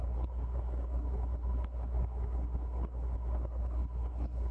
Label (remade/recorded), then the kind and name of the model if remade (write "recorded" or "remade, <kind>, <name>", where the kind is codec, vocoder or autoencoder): remade, codec, SNAC